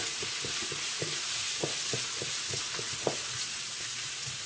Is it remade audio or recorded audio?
remade